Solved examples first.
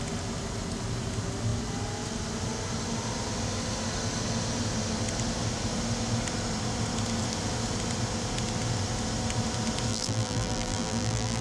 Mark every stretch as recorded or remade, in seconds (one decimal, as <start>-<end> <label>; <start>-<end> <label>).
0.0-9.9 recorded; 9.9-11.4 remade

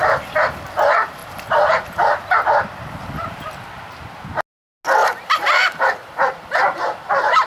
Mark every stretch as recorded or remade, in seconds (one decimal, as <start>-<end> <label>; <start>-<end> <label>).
0.0-5.0 recorded; 5.0-7.1 remade; 7.1-7.5 recorded

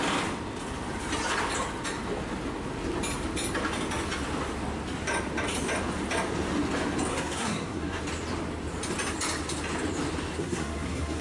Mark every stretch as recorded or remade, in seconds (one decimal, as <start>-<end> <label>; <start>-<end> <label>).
0.0-7.1 recorded; 7.1-8.0 remade; 8.0-10.4 recorded; 10.4-11.2 remade

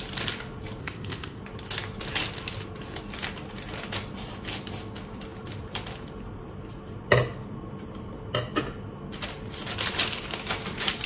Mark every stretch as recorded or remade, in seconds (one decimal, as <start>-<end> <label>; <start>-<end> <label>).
0.0-0.8 recorded; 0.8-1.4 remade; 1.4-11.1 recorded

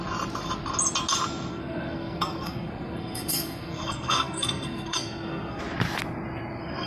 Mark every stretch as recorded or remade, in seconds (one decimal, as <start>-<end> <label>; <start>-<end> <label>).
0.0-1.5 recorded; 1.5-5.6 remade; 5.6-6.9 recorded

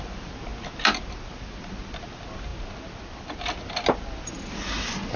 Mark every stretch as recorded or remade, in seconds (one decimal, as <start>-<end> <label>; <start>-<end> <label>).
0.0-5.2 recorded

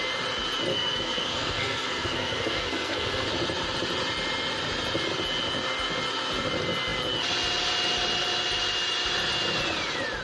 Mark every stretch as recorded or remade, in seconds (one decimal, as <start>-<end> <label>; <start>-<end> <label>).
0.0-0.7 recorded; 0.7-3.3 remade; 3.3-10.2 recorded

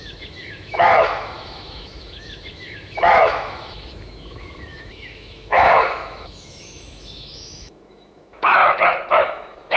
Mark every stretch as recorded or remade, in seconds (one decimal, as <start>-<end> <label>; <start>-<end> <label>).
0.0-8.6 remade; 8.6-9.1 recorded; 9.1-9.8 remade